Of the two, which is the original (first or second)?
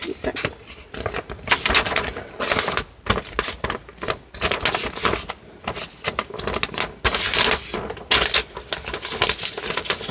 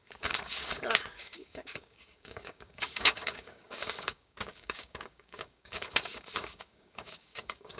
first